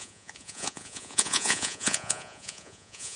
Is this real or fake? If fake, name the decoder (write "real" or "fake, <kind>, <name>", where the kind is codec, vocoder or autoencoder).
fake, vocoder, Vocos